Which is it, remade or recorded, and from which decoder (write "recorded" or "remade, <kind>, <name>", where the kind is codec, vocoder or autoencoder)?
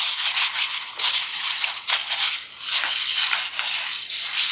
recorded